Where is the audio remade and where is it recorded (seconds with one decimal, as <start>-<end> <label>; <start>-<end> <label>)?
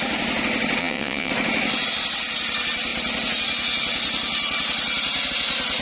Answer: 0.0-0.8 recorded; 0.8-1.3 remade; 1.3-5.8 recorded